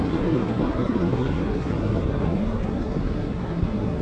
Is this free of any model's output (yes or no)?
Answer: no